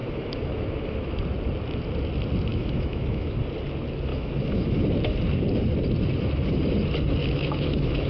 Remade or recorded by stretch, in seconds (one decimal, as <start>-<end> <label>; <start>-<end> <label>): 0.0-1.2 remade; 1.2-2.5 recorded; 2.5-3.4 remade; 3.4-4.1 recorded; 4.1-4.8 remade; 4.8-7.2 recorded; 7.2-8.1 remade